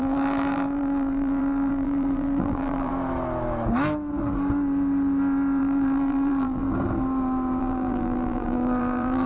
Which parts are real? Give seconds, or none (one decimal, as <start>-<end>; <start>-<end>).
2.9-5.6; 6.6-7.6